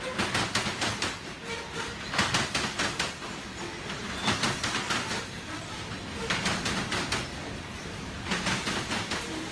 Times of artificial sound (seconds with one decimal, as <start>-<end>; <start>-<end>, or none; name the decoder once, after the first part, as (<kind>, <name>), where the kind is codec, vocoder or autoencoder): none